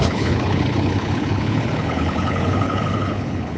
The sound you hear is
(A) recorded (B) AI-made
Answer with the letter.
B